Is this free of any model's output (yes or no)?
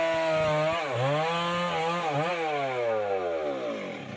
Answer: yes